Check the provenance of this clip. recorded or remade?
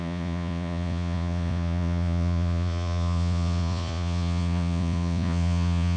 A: remade